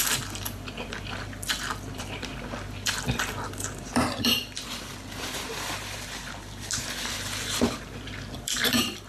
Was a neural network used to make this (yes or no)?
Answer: yes